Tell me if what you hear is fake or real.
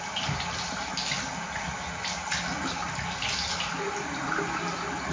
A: real